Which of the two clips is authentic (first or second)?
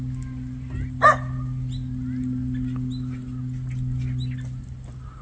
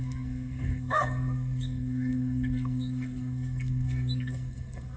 first